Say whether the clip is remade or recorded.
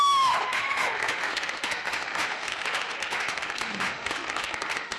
remade